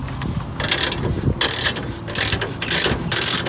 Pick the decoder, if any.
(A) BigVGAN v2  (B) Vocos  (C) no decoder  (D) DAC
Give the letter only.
C